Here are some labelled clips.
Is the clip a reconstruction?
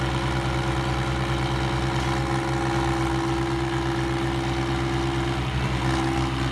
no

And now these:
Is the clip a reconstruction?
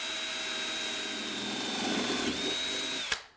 no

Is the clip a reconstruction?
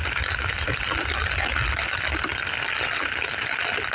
no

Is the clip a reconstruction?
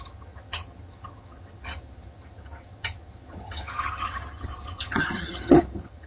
yes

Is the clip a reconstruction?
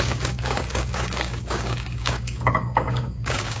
yes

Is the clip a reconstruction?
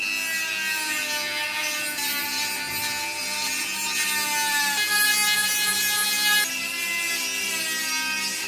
no